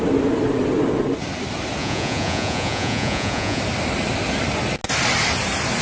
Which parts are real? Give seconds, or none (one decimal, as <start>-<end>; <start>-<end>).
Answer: 0.0-1.8; 3.6-5.8